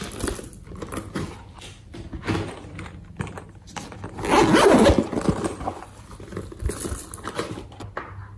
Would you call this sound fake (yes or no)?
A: no